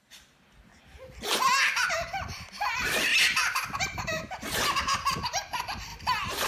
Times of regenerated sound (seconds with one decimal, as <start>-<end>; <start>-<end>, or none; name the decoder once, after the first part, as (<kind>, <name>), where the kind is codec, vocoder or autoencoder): 0.0-0.7 (vocoder, BigVGAN v2); 1.9-3.1; 3.8-6.5